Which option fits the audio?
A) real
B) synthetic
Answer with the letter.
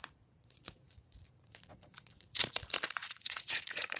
B